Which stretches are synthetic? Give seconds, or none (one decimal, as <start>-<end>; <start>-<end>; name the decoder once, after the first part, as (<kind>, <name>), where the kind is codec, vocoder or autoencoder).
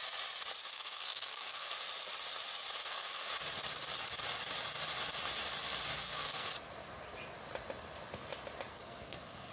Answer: 0.7-1.7 (codec, SNAC); 2.8-3.3; 5.9-6.5; 8.7-9.5